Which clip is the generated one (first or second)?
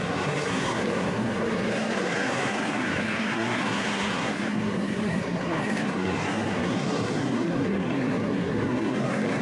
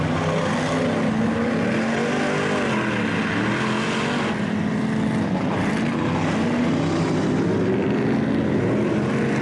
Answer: first